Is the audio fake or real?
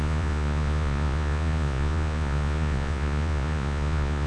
fake